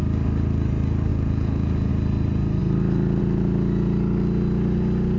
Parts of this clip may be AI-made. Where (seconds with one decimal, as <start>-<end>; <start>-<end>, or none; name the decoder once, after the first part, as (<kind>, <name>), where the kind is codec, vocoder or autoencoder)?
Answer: 1.1-1.9 (vocoder, Vocos)